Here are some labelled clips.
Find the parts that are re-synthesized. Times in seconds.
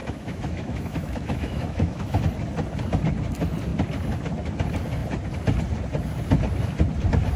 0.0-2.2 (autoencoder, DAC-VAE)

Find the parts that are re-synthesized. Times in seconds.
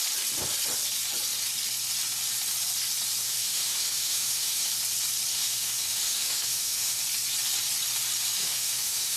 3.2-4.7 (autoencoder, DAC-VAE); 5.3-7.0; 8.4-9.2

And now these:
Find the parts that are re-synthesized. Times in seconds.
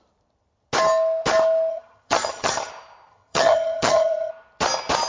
1.7-2.7 (vocoder, HiFi-GAN); 3.1-4.3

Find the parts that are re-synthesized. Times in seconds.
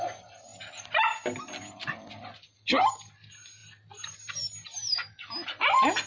none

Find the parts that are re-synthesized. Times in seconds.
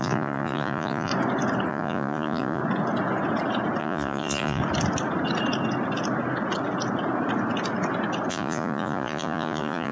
0.0-1.1 (vocoder, Vocos); 1.7-2.6; 3.8-4.6; 8.3-9.9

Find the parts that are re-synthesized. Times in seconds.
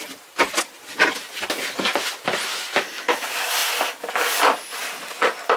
1.9-2.9 (vocoder, BigVGAN v2)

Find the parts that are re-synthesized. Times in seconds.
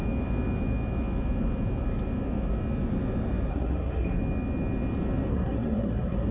3.5-4.2 (codec, SNAC); 5.3-6.3